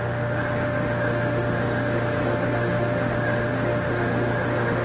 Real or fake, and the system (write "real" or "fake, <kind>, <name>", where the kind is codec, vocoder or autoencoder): fake, autoencoder, DAC-VAE